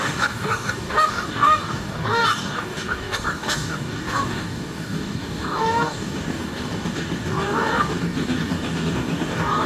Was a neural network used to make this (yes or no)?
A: yes